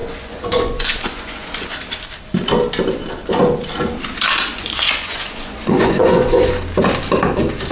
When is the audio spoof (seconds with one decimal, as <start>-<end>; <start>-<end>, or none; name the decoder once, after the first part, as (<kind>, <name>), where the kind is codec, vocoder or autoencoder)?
0.0-1.7 (vocoder, Vocos); 4.5-6.5